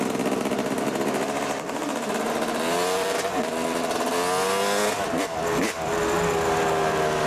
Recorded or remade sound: recorded